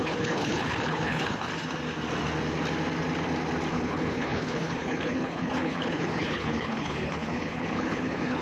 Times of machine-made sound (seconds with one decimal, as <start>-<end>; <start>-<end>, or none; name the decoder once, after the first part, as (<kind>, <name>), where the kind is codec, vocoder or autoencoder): 0.0-1.5 (codec, HILCodec); 3.7-8.4